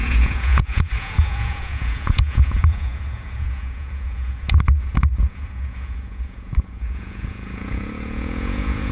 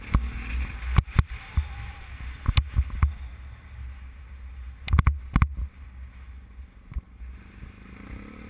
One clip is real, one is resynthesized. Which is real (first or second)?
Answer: second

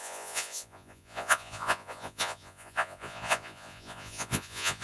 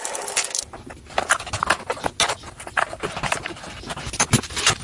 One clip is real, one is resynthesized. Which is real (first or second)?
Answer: second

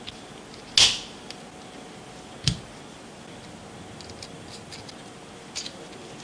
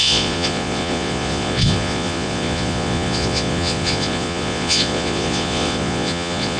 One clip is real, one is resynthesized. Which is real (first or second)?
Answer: first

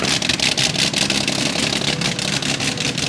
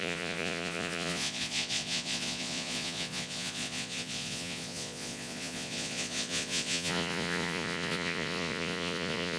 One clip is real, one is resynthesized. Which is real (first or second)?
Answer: first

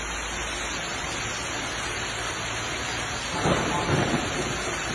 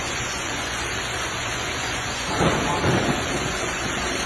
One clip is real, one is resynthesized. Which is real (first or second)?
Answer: first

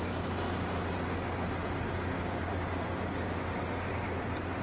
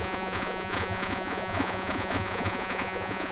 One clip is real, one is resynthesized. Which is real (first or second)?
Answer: first